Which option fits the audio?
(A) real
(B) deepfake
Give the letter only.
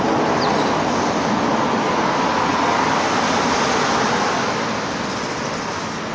A